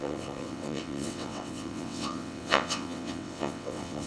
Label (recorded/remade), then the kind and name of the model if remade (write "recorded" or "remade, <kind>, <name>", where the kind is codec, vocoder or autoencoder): remade, vocoder, WaveNeXt